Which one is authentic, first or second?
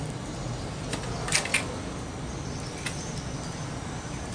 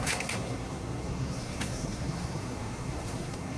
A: first